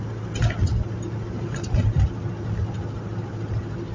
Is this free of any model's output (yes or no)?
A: yes